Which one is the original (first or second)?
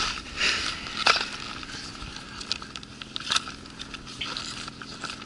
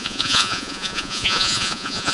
first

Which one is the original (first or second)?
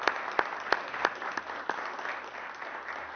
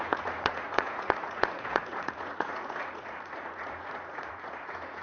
first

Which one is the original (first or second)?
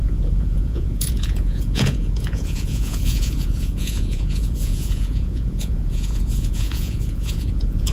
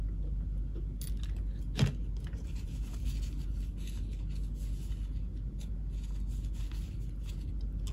second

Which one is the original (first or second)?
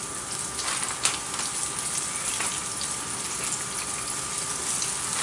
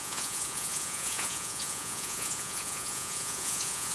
first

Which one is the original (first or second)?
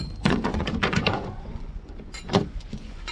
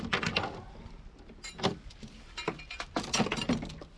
second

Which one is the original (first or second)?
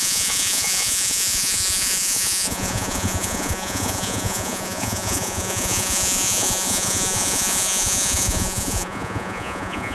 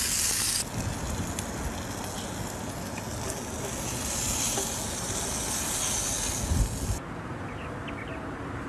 second